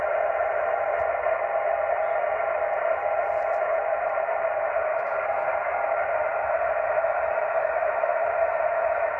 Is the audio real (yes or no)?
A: yes